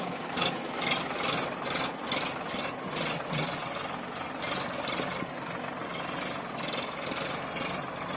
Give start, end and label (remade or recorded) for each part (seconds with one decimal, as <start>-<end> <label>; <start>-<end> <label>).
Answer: 0.0-8.2 recorded